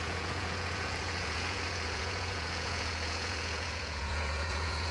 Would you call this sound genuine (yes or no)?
no